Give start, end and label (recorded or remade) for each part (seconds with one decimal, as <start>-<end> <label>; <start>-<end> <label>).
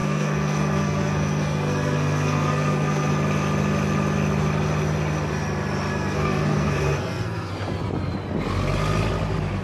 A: 0.0-3.1 remade; 3.1-5.9 recorded; 5.9-7.5 remade; 7.5-9.6 recorded